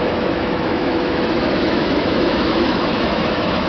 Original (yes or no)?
no